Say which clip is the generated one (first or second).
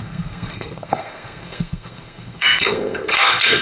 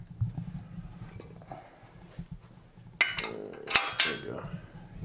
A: first